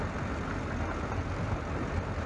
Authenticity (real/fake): real